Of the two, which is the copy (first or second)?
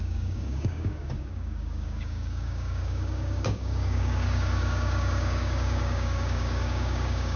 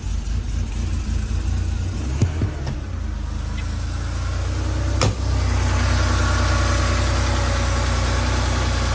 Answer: first